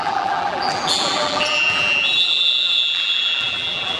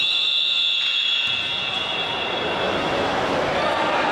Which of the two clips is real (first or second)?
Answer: second